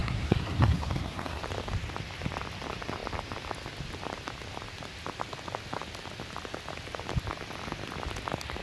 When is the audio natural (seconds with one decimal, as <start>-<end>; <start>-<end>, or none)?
1.4-8.6